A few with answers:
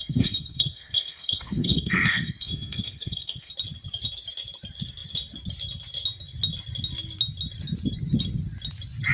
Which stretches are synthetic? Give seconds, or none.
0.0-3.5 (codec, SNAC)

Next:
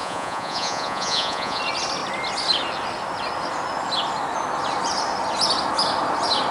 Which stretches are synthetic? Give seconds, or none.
0.0-1.6 (vocoder, Vocos)